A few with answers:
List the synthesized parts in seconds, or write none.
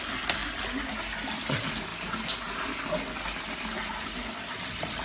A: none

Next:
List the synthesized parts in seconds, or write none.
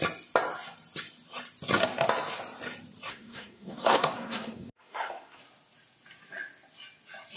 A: 3.1-5.4 (codec, SNAC)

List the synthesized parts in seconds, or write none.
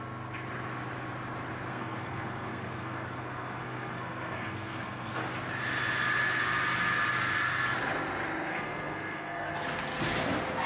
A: 1.7-5.2 (codec, SNAC); 8.5-9.5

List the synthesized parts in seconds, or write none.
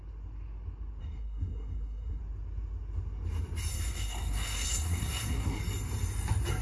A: 1.0-2.2 (codec, SNAC); 3.7-5.6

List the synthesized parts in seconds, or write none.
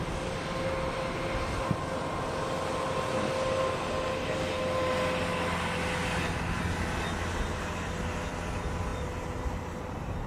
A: none